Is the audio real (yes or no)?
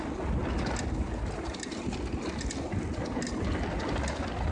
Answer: yes